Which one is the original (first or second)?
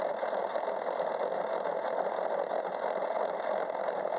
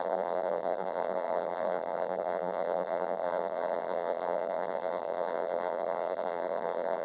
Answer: first